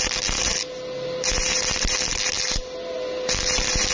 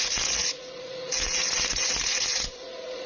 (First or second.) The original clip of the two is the first